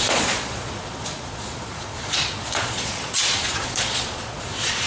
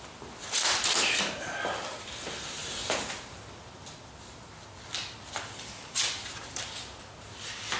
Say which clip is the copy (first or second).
first